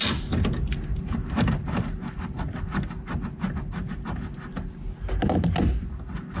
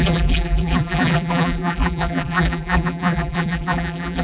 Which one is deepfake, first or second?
second